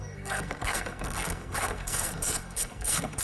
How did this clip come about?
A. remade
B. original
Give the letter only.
A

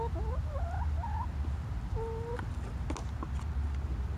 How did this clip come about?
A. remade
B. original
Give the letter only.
B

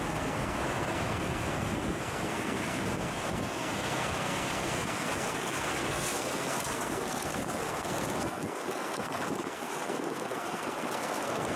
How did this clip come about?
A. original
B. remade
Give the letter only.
B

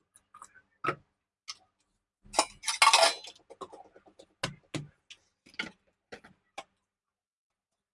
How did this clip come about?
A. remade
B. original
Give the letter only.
B